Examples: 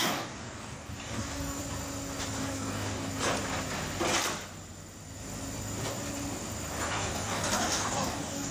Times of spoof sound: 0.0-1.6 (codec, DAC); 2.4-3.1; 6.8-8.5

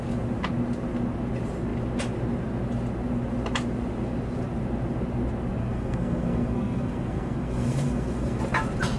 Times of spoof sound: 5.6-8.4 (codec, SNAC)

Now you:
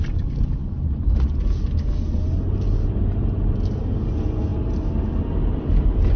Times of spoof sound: none

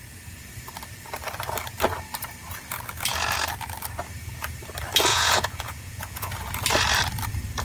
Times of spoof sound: 5.1-6.3 (vocoder, Vocos)